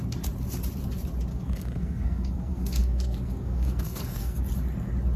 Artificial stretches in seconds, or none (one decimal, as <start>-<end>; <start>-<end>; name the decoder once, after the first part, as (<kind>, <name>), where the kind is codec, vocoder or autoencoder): 1.3-4.4 (codec, SNAC)